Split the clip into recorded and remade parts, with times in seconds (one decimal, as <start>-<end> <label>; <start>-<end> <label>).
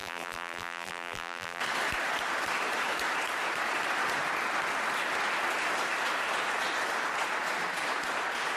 0.0-1.6 remade; 1.6-8.6 recorded